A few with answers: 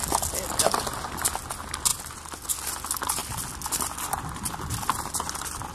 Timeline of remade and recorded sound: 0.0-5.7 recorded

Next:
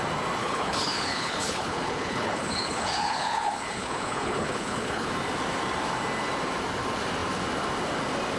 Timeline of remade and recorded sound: 0.0-0.4 recorded; 0.4-5.1 remade; 5.1-8.4 recorded

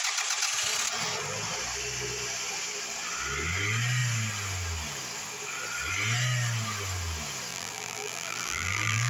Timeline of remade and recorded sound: 0.0-7.5 recorded; 7.5-9.1 remade